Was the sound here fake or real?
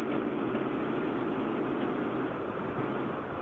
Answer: real